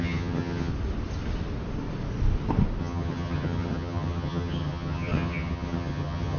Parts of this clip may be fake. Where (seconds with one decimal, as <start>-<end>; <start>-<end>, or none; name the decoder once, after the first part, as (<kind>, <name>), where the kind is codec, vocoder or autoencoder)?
0.0-0.7 (vocoder, HiFi-GAN); 2.8-6.4